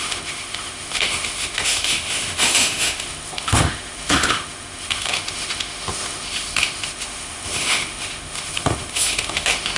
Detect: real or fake fake